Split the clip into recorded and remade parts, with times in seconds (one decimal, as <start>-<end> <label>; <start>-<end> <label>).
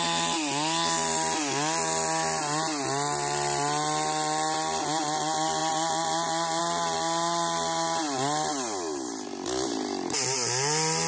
0.0-11.1 recorded